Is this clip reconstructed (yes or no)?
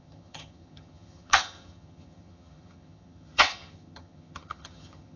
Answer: yes